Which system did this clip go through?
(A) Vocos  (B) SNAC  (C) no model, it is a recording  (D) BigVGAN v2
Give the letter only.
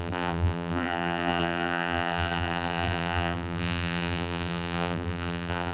D